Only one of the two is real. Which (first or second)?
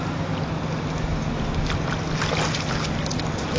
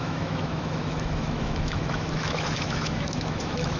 first